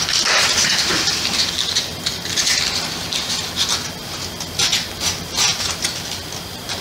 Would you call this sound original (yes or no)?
yes